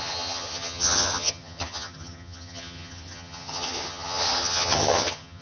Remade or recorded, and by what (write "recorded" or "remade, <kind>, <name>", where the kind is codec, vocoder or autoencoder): remade, vocoder, HiFi-GAN